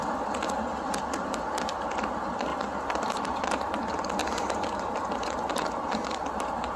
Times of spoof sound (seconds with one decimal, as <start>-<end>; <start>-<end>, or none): 2.5-3.8